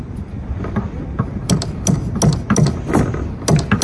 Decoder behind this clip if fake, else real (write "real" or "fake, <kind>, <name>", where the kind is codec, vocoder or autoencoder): real